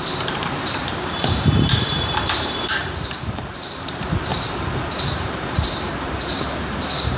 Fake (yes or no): yes